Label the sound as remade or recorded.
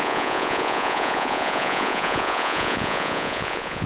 remade